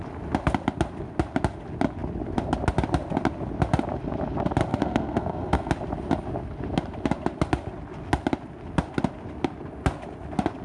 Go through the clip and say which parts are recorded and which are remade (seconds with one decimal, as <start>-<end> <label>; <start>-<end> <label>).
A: 0.0-4.7 recorded; 4.7-5.7 remade; 5.7-10.6 recorded